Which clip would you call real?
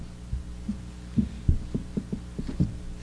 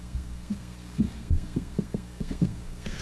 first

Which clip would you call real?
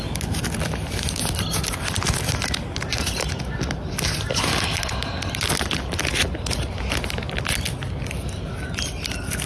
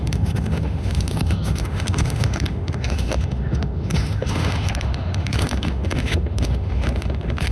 first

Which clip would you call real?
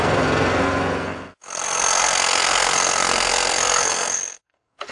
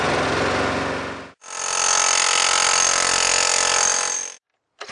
second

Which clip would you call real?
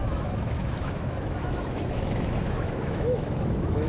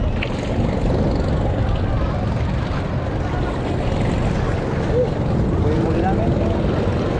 second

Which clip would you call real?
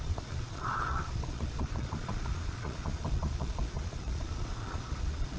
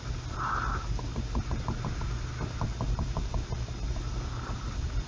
second